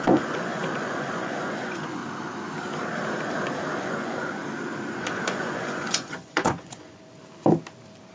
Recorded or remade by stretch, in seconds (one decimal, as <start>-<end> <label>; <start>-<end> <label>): 0.0-2.0 remade; 2.0-3.8 recorded; 3.8-4.4 remade; 4.4-4.9 recorded; 4.9-7.2 remade; 7.2-8.1 recorded